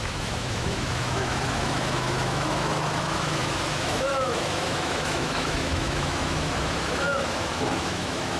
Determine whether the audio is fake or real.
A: fake